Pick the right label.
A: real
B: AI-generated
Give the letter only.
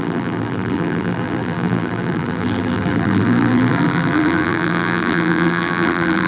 B